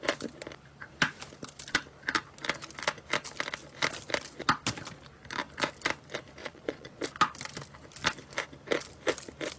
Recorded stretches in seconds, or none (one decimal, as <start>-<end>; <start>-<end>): 0.0-6.4; 7.0-9.6